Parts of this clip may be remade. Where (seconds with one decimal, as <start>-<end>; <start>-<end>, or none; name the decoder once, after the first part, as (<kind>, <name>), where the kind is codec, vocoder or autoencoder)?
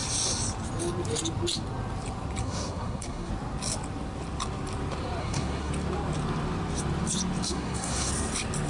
2.4-3.3 (codec, SNAC); 5.2-5.7; 7.4-8.1